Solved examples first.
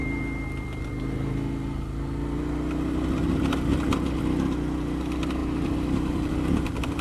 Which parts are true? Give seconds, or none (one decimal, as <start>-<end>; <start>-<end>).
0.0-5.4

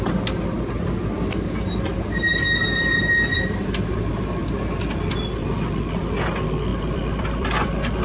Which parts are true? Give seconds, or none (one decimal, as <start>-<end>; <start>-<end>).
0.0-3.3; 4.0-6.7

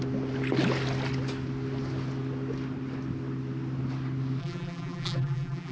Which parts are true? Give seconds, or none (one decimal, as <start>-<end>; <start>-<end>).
0.0-4.4

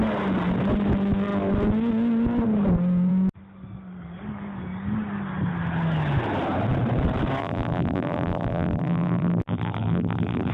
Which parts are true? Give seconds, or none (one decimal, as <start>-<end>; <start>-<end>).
0.0-7.4

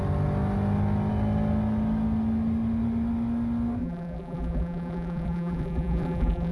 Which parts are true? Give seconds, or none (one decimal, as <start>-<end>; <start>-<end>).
0.0-3.8

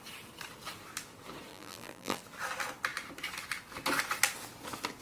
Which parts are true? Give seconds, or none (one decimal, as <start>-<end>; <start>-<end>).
0.0-1.5; 2.2-5.0